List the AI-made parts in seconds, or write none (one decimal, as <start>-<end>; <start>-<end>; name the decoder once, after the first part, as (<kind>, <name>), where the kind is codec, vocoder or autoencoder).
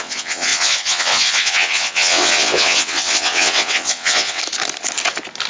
0.0-4.4 (vocoder, WaveNeXt)